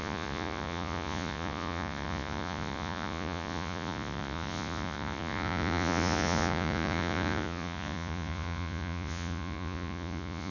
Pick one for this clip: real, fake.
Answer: fake